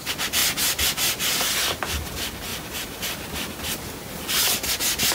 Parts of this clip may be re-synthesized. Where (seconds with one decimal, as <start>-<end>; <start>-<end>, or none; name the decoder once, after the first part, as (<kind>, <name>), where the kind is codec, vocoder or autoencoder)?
none